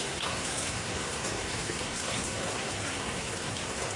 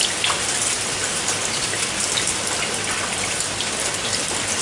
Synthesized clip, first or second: first